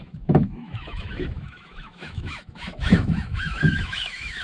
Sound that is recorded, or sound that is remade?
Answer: remade